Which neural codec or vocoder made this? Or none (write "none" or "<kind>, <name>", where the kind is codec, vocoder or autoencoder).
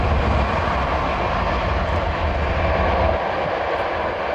none